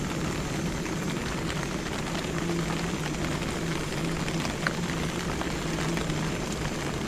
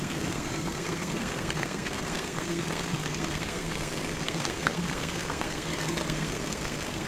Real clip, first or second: first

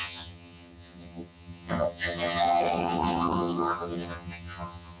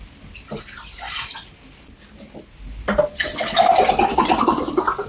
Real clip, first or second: second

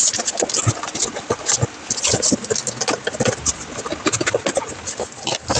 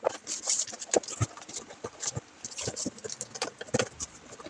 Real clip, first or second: first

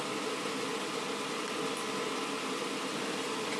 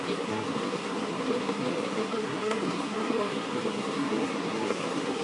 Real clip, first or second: first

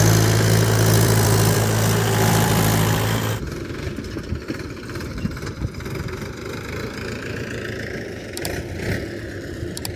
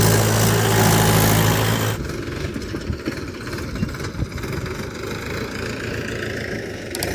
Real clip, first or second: second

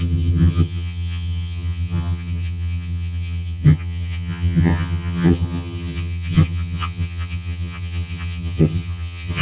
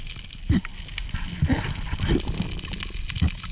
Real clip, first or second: second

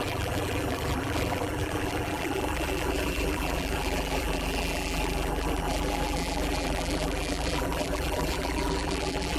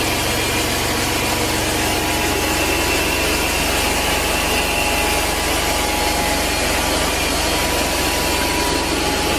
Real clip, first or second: second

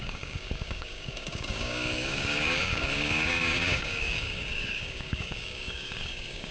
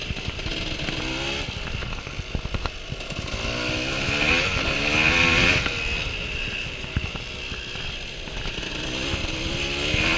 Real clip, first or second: second